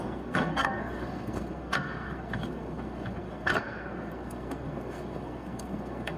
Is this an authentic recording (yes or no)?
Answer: no